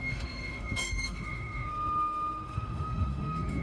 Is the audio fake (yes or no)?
yes